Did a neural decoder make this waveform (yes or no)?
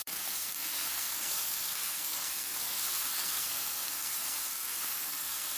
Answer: yes